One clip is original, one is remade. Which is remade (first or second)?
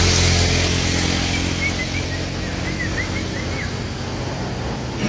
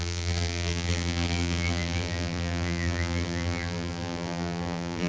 second